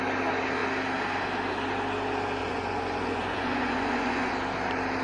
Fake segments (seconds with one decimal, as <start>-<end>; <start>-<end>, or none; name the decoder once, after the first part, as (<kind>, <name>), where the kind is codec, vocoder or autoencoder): 2.4-4.3 (vocoder, Vocos)